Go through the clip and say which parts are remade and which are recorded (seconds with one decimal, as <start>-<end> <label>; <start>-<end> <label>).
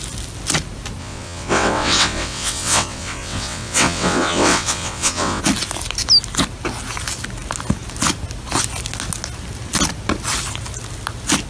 0.0-1.0 recorded; 1.0-5.4 remade; 5.4-11.5 recorded